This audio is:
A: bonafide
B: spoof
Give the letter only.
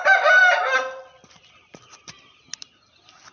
A